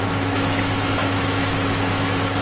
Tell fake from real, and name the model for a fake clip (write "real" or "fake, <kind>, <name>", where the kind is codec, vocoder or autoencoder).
fake, autoencoder, DAC-VAE